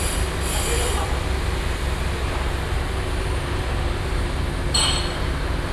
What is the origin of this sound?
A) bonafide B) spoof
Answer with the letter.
A